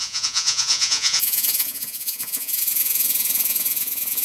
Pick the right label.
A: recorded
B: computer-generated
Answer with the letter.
B